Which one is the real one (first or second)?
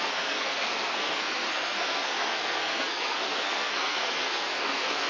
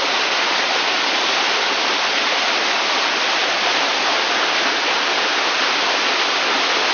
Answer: second